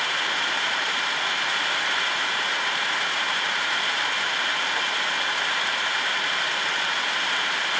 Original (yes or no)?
no